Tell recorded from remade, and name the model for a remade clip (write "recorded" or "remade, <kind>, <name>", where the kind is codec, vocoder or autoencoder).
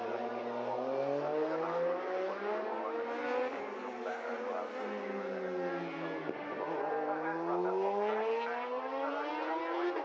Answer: recorded